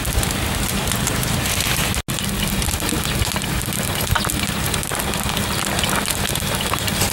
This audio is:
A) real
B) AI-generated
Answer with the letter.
A